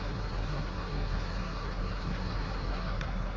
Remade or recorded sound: remade